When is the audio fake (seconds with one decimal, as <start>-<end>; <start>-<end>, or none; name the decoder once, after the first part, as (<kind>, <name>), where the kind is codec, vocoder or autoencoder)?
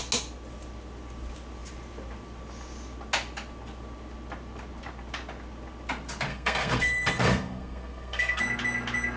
6.3-8.4 (codec, SNAC)